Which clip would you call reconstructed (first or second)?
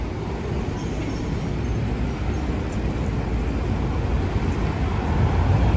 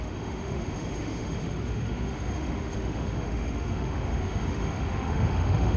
second